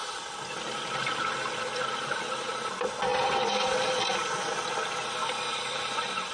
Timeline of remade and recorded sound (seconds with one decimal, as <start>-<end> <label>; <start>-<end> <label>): 0.0-6.3 recorded